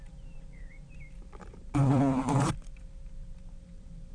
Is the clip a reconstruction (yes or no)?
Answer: yes